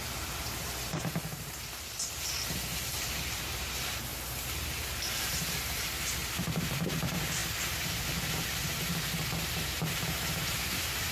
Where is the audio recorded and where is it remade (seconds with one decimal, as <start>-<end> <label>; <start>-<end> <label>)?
0.0-11.1 remade